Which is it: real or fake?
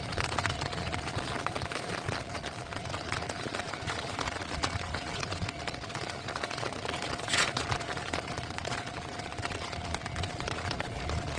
fake